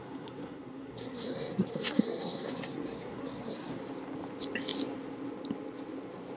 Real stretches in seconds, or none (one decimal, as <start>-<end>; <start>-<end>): 3.8-6.4